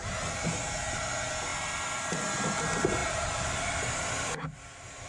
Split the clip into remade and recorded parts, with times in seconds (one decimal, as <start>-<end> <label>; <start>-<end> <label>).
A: 0.0-3.0 recorded; 3.0-5.1 remade